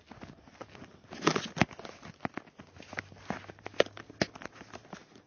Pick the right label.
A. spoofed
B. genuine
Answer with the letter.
B